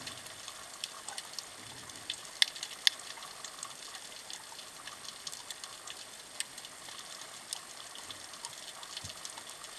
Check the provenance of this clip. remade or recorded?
recorded